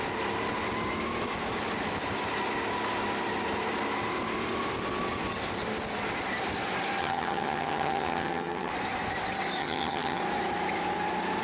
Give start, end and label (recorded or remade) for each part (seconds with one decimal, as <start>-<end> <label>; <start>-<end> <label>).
0.0-7.0 recorded; 7.0-8.7 remade; 8.7-9.6 recorded; 9.6-10.2 remade; 10.2-11.4 recorded